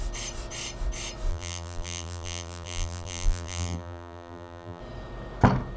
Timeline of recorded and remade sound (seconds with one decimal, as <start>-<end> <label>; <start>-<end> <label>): 0.0-1.3 recorded; 1.3-4.8 remade; 4.8-5.8 recorded